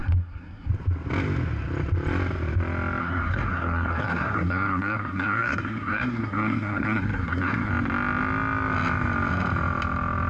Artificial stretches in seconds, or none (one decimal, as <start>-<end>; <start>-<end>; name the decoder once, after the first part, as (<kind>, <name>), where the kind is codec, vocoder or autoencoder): 0.0-0.7 (codec, SNAC); 3.0-7.7